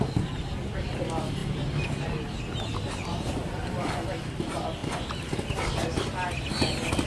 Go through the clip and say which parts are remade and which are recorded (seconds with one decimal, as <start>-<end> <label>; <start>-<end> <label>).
0.0-7.1 recorded